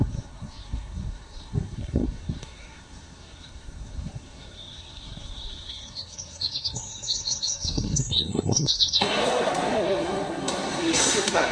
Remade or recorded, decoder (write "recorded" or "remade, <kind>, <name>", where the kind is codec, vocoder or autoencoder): remade, codec, SNAC